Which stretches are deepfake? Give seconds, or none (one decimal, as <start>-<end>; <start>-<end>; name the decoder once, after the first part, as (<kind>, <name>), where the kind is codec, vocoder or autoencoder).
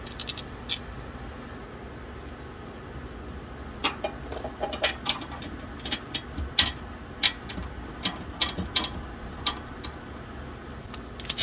none